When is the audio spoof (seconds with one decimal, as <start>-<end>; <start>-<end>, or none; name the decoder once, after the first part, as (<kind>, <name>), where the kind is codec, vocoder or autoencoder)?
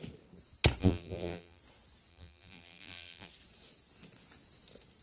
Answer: 0.8-1.6 (vocoder, BigVGAN v2); 2.1-3.3